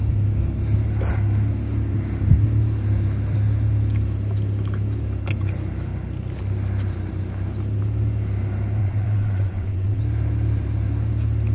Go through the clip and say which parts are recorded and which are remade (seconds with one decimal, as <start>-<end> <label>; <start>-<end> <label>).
0.0-8.8 recorded; 8.8-10.0 remade; 10.0-11.5 recorded